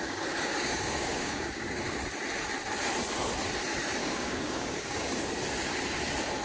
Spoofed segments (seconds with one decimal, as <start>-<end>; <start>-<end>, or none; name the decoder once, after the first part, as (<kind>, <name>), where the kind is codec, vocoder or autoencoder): 0.0-1.8 (codec, DAC); 4.0-5.2